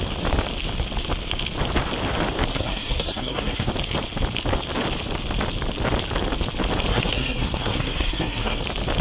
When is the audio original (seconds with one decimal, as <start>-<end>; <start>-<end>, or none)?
0.0-2.5; 3.7-6.9; 8.6-9.0